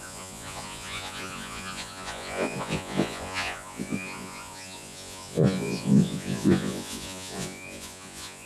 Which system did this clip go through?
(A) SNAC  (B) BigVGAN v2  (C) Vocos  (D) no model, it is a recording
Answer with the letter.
C